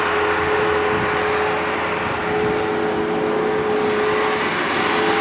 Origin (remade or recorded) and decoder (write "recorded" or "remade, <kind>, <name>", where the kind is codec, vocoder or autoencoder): recorded